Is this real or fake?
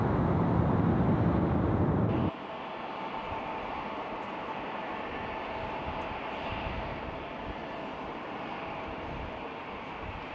real